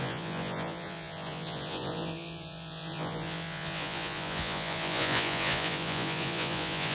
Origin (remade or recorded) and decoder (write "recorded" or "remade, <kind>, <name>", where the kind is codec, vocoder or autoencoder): remade, vocoder, Vocos